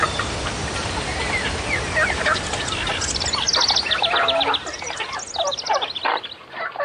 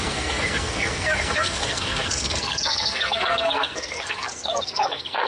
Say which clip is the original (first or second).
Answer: first